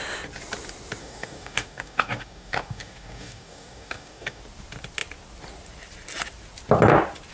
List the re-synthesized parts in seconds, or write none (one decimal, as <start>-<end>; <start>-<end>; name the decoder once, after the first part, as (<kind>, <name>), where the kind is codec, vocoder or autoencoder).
1.0-4.4 (codec, DAC)